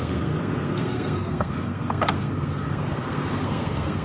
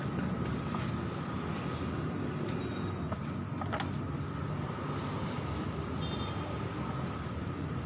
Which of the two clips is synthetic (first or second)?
first